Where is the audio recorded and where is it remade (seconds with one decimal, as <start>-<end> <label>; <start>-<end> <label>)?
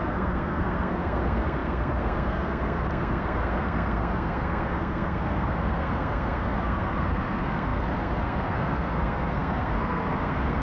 0.0-10.6 remade